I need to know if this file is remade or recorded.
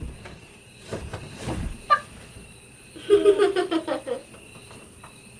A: remade